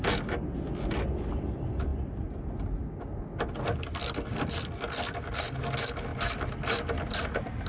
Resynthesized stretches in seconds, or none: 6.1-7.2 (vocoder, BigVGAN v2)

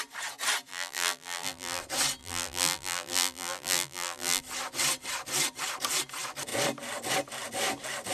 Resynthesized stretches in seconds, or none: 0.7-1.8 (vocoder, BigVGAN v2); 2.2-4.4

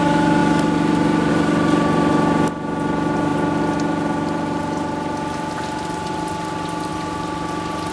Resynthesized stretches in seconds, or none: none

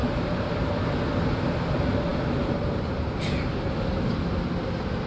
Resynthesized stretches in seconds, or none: 0.0-0.7 (vocoder, BigVGAN v2)

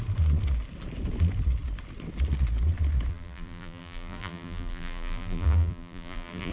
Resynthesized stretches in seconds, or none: 3.1-6.5 (vocoder, BigVGAN v2)